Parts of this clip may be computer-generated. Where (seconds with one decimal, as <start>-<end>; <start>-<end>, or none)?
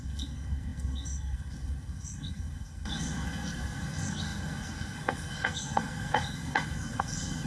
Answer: 0.0-7.5